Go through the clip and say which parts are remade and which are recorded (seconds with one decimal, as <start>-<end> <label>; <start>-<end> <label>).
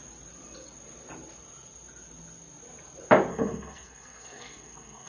0.0-3.3 recorded; 3.3-5.1 remade